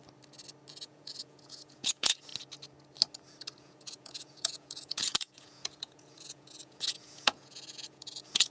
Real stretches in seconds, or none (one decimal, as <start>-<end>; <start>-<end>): 0.0-0.7; 2.3-3.6